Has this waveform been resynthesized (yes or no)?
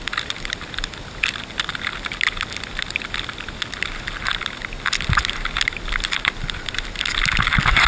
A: no